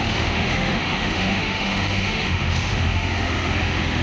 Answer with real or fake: fake